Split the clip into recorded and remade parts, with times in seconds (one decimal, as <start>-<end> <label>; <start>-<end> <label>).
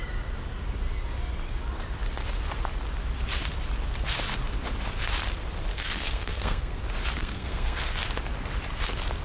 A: 0.0-5.7 recorded; 5.7-6.8 remade; 6.8-7.2 recorded; 7.2-8.0 remade; 8.0-9.2 recorded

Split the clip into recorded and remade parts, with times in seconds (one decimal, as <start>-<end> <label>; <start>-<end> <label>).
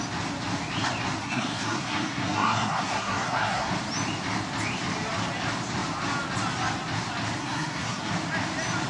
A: 0.0-1.2 recorded; 1.2-3.7 remade; 3.7-7.4 recorded; 7.4-8.1 remade; 8.1-8.9 recorded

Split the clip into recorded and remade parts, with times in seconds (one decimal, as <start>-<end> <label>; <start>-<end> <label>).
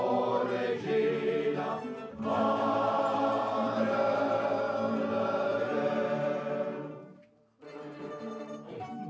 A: 0.0-2.0 recorded; 2.0-4.5 remade; 4.5-7.3 recorded; 7.3-9.1 remade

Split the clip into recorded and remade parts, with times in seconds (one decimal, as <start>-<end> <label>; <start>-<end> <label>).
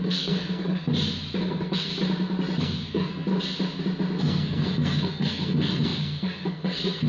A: 0.0-0.9 remade; 0.9-1.4 recorded; 1.4-1.9 remade; 1.9-2.6 recorded; 2.6-3.1 remade; 3.1-4.2 recorded; 4.2-7.1 remade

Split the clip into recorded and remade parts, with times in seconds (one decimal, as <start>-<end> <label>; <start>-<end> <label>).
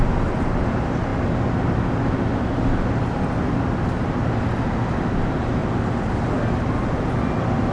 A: 0.0-7.7 recorded